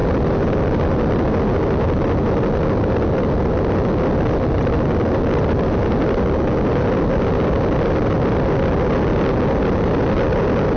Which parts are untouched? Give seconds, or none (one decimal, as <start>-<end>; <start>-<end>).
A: 0.0-10.8